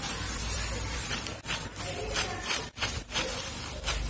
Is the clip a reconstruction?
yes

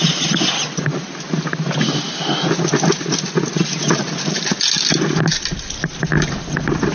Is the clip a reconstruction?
no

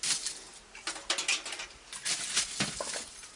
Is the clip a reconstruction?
no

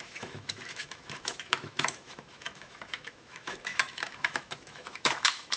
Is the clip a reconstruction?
yes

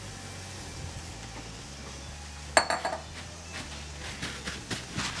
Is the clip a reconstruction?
no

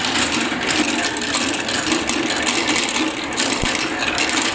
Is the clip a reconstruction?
no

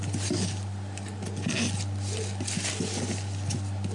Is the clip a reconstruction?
no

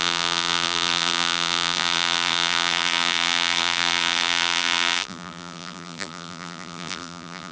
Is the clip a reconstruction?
yes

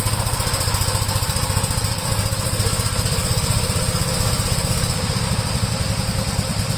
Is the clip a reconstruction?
yes